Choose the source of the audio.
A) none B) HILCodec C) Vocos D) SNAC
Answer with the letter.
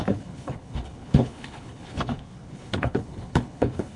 B